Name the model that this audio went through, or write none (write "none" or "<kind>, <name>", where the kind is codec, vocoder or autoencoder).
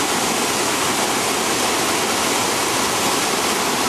none